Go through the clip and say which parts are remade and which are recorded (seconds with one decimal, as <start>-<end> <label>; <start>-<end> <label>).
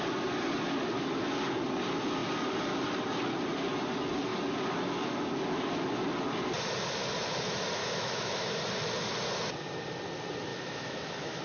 0.0-7.8 recorded; 7.8-8.6 remade; 8.6-10.5 recorded; 10.5-11.4 remade